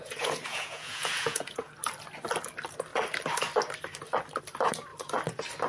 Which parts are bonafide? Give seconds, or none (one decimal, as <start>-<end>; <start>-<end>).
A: 1.7-5.7